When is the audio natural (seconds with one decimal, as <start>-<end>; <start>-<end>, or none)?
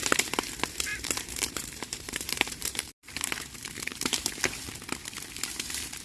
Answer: 0.0-0.9; 3.3-3.9; 4.4-6.0